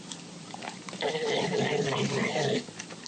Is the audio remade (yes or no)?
yes